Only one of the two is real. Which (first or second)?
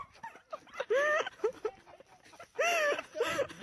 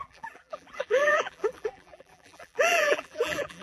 first